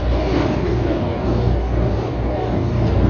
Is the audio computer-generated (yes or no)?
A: yes